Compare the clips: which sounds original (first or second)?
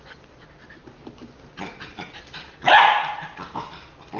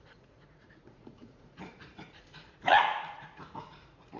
first